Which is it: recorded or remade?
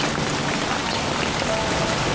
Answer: recorded